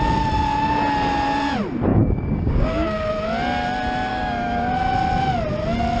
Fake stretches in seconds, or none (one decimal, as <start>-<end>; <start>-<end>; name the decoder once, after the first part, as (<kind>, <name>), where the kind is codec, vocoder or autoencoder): 1.9-3.1 (codec, DAC); 4.1-4.7

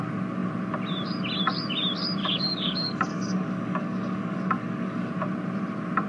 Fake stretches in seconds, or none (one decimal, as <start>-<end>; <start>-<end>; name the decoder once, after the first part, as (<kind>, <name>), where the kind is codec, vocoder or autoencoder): 2.2-5.1 (codec, DAC)